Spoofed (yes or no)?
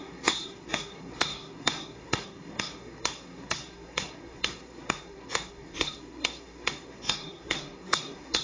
yes